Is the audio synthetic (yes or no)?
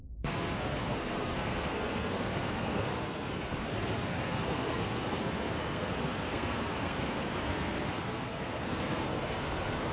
yes